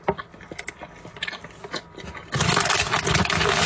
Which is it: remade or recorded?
recorded